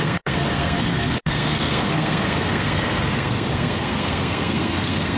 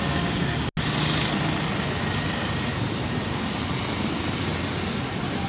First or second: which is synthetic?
first